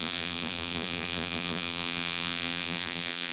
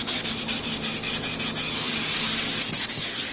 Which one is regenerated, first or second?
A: first